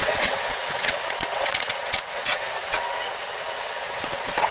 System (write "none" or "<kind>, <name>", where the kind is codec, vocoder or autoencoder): vocoder, WaveNeXt